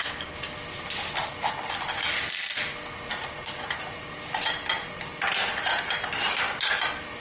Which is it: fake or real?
real